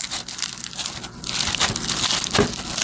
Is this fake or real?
real